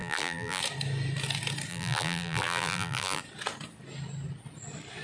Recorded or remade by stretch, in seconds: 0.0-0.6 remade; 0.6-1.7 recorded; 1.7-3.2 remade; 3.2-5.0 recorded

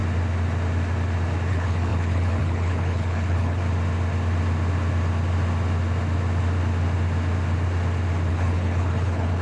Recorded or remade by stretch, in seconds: 0.0-1.5 recorded; 1.5-3.6 remade; 3.6-8.3 recorded; 8.3-9.4 remade

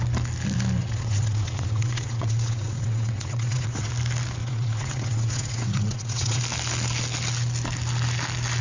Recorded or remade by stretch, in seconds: 0.0-0.8 recorded; 0.8-3.9 remade; 3.9-4.4 recorded; 4.4-6.4 remade; 6.4-8.6 recorded

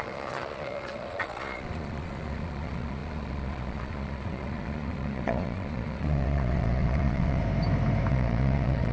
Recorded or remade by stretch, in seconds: 0.0-7.4 remade; 7.4-8.1 recorded; 8.1-8.9 remade

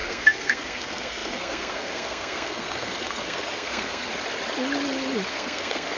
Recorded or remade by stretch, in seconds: 0.0-4.1 remade; 4.1-5.3 recorded; 5.3-6.0 remade